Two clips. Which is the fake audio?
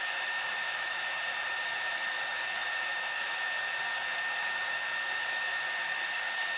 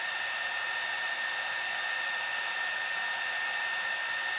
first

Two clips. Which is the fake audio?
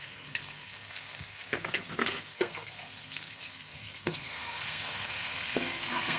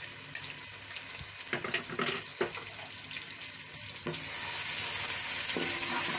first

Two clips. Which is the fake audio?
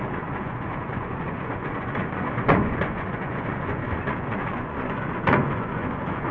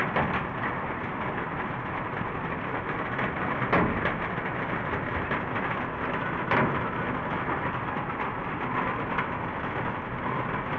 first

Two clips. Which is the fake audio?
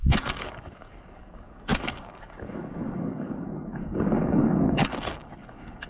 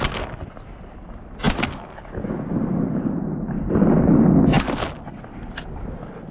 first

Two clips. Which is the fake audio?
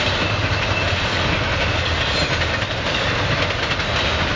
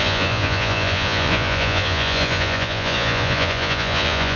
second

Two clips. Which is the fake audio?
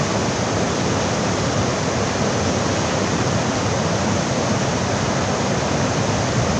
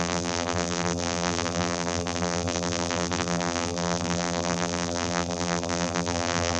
second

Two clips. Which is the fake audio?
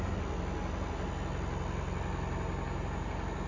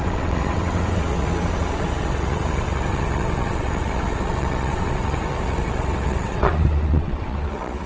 second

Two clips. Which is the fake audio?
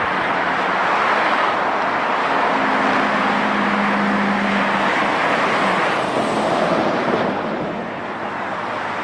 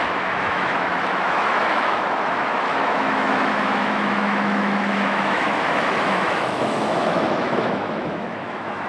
second